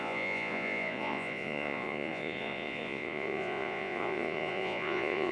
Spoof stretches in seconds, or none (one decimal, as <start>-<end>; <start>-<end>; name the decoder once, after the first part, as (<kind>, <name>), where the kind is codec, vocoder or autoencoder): 0.0-5.3 (vocoder, Vocos)